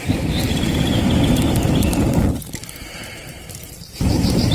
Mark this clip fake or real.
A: fake